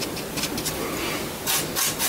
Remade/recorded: recorded